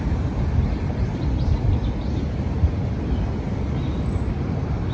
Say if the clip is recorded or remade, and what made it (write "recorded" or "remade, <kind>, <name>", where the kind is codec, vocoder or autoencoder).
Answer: recorded